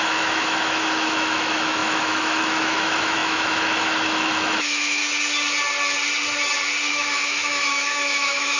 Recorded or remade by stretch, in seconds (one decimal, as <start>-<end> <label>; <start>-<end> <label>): 0.0-5.0 remade; 5.0-6.9 recorded; 6.9-8.6 remade